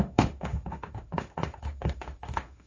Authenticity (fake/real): fake